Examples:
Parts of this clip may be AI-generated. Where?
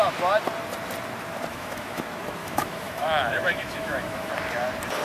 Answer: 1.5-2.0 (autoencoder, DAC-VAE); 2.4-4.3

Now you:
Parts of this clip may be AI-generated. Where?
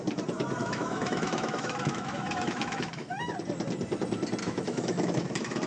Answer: 0.6-3.3 (autoencoder, DAC-VAE); 4.4-5.7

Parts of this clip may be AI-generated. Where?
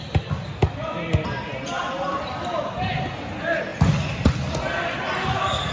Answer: none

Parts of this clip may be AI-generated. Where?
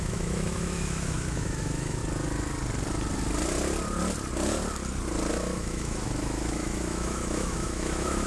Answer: 0.0-2.0 (autoencoder, DAC-VAE); 5.3-8.3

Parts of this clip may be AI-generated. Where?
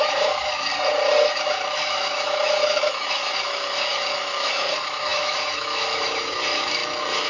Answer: 0.0-0.7 (autoencoder, DAC-VAE); 1.3-7.3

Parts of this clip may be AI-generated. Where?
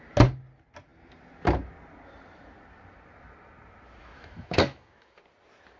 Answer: 4.0-5.2 (autoencoder, DAC-VAE)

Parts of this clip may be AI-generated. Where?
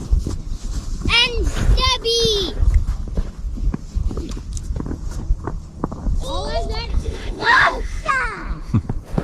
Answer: 6.9-8.1 (autoencoder, DAC-VAE)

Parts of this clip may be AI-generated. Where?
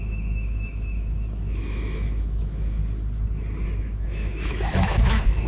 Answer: 0.0-2.8 (autoencoder, DAC-VAE); 3.8-5.5